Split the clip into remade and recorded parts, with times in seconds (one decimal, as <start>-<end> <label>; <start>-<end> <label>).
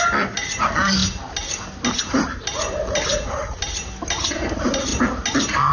0.0-5.7 recorded